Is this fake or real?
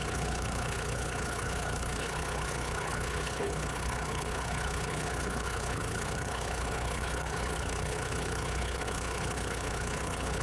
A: fake